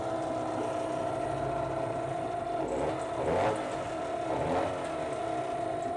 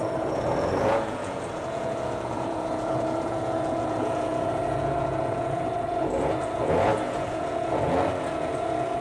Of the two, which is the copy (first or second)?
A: second